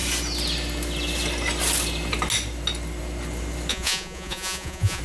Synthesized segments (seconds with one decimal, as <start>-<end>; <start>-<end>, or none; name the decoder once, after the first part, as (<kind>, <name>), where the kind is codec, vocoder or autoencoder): 3.7-5.0 (vocoder, Vocos)